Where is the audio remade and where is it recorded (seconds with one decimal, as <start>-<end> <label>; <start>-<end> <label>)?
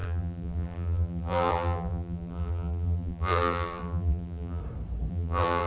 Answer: 0.0-4.6 remade; 4.6-5.1 recorded; 5.1-5.7 remade